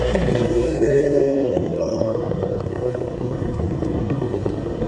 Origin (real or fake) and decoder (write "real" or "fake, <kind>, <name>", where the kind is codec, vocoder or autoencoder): fake, codec, SNAC